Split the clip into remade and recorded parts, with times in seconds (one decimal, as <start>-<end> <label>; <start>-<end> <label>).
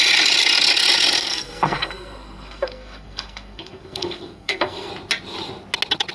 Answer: 0.0-1.2 recorded; 1.2-4.9 remade; 4.9-6.1 recorded